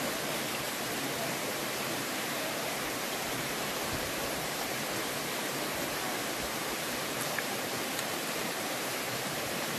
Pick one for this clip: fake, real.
fake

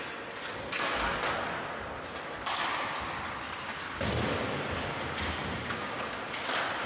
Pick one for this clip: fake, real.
real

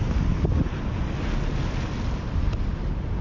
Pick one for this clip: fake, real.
real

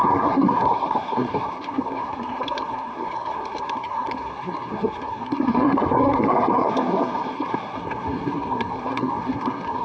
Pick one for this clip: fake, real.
fake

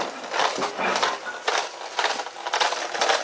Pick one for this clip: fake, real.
real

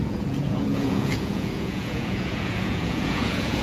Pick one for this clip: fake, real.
fake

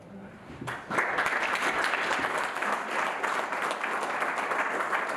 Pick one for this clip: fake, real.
real